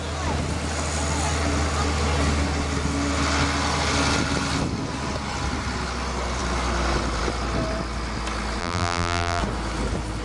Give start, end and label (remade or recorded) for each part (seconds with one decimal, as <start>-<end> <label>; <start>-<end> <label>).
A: 0.0-8.6 recorded; 8.6-9.4 remade; 9.4-10.2 recorded